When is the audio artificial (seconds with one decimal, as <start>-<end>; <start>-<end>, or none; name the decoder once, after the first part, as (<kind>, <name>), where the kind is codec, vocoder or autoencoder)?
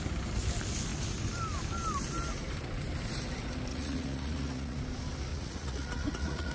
3.7-4.8 (vocoder, Vocos); 5.3-6.5